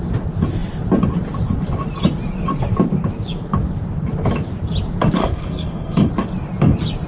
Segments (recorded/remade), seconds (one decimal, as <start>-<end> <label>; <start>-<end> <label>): 0.0-5.2 recorded; 5.2-6.1 remade; 6.1-7.1 recorded

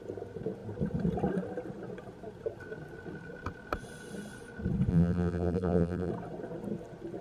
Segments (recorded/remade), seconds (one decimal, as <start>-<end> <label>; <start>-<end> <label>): 0.0-4.9 recorded; 4.9-6.1 remade; 6.1-7.2 recorded

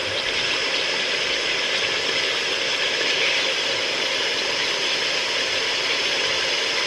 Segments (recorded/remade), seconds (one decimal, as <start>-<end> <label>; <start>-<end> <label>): 0.0-6.9 recorded